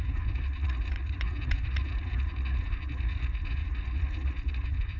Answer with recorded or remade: remade